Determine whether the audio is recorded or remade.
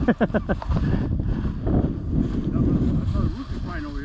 recorded